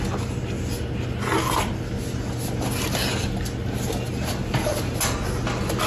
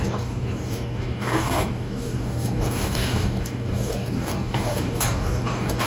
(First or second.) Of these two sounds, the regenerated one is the second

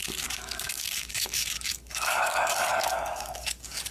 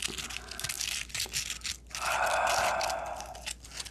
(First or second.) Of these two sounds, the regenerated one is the first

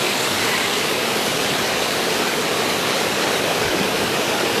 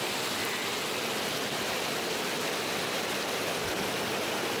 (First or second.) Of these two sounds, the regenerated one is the first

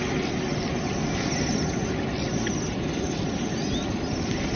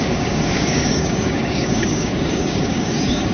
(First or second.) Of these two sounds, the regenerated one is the second